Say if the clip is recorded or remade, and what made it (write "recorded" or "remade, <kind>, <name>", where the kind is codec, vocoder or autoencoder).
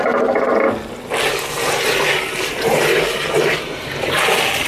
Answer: recorded